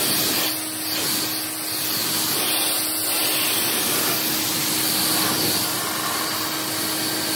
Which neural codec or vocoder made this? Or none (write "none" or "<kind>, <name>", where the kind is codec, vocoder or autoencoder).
none